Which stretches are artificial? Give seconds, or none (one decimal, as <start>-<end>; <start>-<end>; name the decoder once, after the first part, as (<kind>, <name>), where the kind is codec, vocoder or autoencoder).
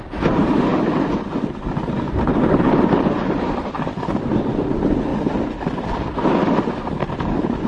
0.0-0.7 (vocoder, BigVGAN v2); 2.6-5.1; 6.3-7.7